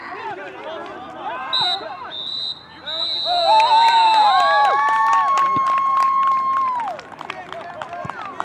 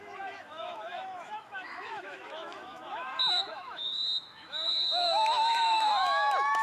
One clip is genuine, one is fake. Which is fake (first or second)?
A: second